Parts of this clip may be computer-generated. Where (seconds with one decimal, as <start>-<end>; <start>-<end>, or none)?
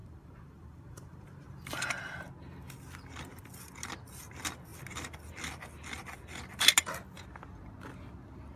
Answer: 0.0-1.9